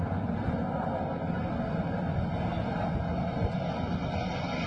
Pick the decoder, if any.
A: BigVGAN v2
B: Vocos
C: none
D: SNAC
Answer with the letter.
C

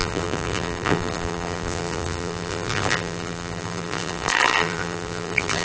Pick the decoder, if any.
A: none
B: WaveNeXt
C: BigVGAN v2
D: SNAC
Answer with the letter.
C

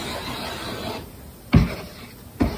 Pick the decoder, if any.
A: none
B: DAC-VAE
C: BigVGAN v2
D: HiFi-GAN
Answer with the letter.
A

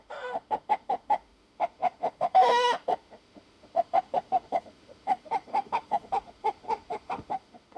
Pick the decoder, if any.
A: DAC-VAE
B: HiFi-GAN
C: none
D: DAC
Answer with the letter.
A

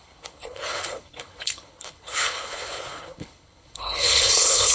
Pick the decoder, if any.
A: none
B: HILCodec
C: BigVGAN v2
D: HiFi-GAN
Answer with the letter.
B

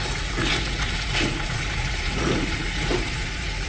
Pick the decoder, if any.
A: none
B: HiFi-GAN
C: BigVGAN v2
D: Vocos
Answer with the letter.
D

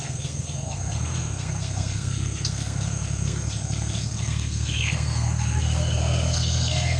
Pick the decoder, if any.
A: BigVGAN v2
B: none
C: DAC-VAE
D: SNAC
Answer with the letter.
D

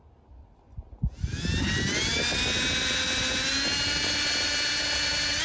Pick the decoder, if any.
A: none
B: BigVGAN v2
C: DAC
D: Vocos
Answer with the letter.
A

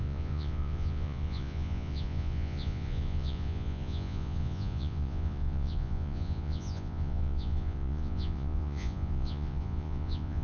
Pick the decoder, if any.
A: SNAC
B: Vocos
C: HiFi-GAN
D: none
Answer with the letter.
B